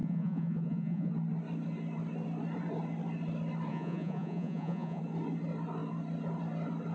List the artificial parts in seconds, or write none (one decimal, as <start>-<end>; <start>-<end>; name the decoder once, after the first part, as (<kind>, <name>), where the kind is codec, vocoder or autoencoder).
0.0-1.1 (vocoder, Vocos); 3.7-5.0

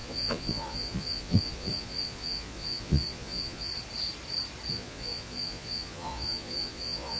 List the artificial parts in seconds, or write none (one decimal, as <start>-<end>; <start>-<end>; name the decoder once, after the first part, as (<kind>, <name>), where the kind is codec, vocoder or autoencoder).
0.0-3.7 (vocoder, Vocos); 4.7-7.2